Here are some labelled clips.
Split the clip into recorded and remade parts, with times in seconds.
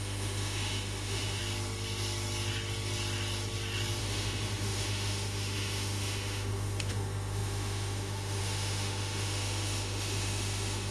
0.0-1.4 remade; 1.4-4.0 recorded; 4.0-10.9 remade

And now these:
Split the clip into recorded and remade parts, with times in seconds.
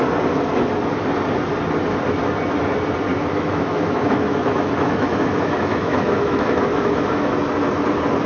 0.0-3.1 recorded; 3.1-7.3 remade; 7.3-8.3 recorded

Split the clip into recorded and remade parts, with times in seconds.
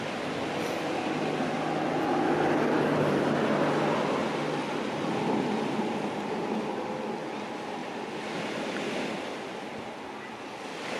0.0-11.0 recorded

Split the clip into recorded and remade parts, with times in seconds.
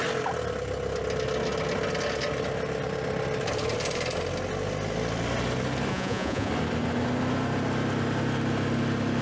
0.0-5.9 recorded; 5.9-6.5 remade; 6.5-9.2 recorded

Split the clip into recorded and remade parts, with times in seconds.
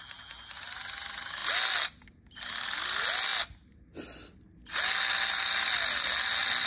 0.0-6.7 recorded